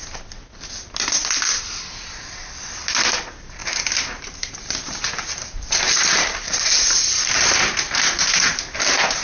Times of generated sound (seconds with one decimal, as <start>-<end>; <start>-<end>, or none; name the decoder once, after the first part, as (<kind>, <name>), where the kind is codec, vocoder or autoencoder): 3.6-8.6 (vocoder, BigVGAN v2)